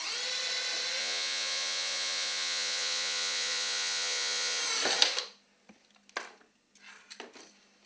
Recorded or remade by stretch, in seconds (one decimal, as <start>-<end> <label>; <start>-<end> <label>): 0.0-1.0 recorded; 1.0-4.6 remade; 4.6-7.9 recorded